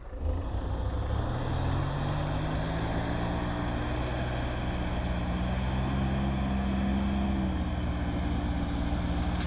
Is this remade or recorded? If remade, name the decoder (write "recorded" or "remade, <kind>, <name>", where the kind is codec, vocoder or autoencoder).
recorded